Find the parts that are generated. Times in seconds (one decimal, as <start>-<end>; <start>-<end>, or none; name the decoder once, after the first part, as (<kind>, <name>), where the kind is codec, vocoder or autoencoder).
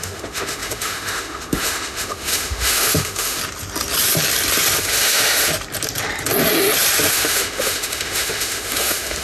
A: 0.0-3.4 (autoencoder, DAC-VAE); 4.8-5.5; 7.1-9.2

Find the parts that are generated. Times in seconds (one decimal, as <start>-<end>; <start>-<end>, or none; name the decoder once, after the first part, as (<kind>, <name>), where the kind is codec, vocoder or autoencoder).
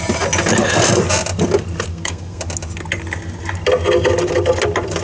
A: 1.9-2.4 (codec, SNAC)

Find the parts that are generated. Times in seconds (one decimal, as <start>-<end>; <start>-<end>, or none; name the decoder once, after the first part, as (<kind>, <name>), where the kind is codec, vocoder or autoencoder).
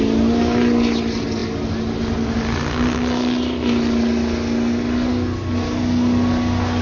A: none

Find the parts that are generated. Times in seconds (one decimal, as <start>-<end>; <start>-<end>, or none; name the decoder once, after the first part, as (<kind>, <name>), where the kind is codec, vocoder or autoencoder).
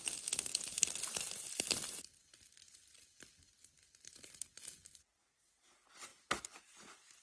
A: none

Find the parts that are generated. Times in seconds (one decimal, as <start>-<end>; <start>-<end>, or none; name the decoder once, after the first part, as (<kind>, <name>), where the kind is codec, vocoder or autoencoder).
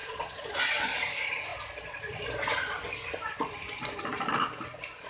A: 0.0-0.5 (vocoder, Vocos)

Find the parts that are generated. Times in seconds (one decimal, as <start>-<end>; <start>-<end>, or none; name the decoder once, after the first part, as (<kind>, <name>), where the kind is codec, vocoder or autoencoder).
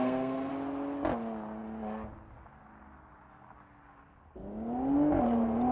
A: 0.0-0.5 (codec, SNAC)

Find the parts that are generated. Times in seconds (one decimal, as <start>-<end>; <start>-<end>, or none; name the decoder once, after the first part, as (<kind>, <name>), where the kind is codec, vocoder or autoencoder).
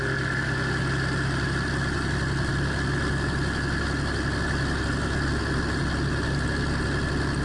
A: none